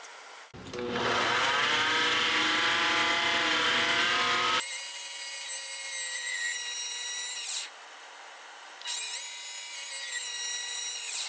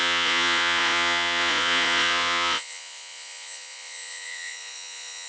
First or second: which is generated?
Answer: second